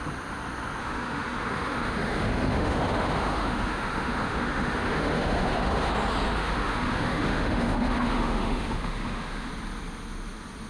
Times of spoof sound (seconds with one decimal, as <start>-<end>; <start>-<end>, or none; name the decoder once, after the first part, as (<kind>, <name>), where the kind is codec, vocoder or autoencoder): 0.8-5.9 (autoencoder, DAC-VAE); 6.4-9.5